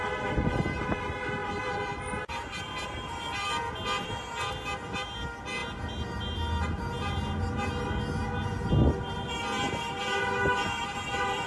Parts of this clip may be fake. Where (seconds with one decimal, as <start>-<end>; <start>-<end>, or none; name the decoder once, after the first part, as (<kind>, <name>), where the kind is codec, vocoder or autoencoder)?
none